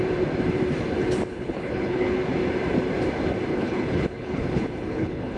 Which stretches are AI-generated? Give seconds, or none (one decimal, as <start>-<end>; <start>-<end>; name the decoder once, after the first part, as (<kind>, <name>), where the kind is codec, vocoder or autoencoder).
1.3-2.1 (codec, HILCodec); 3.5-5.4